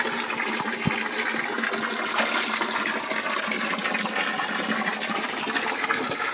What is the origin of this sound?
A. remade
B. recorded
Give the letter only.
B